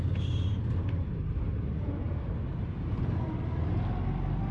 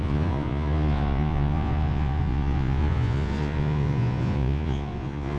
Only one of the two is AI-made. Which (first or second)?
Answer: second